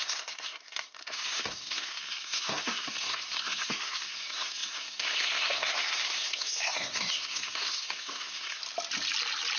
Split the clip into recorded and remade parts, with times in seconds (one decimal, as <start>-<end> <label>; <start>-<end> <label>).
0.0-8.6 remade; 8.6-9.6 recorded